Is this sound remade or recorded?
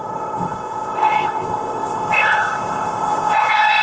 remade